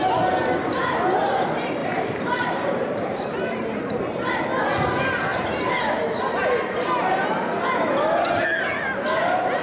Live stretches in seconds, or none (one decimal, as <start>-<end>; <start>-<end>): 0.0-1.8; 4.3-9.6